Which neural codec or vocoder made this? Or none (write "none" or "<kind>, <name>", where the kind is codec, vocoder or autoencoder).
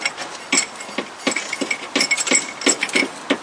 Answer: none